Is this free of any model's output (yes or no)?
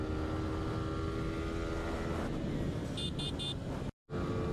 yes